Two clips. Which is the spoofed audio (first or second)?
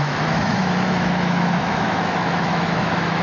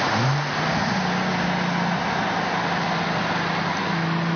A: first